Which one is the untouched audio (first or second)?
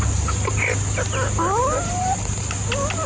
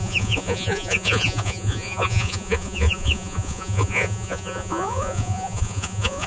first